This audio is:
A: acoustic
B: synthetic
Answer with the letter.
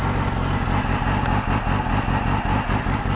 A